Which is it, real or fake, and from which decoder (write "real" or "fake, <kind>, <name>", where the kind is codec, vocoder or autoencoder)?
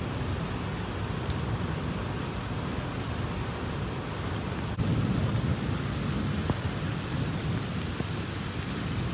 real